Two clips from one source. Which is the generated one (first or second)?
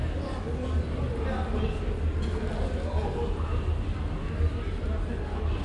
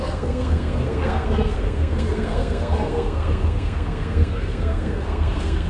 second